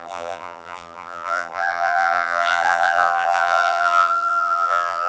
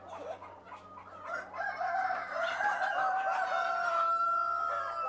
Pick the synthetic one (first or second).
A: first